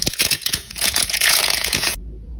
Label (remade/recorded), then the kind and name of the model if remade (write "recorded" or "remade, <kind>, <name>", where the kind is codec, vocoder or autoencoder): remade, vocoder, Vocos